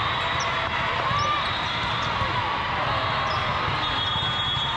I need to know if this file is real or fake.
real